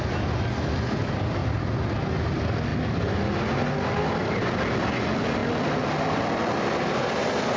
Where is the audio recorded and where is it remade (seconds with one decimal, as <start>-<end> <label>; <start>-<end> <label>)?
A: 0.0-1.4 recorded; 1.4-2.0 remade; 2.0-7.6 recorded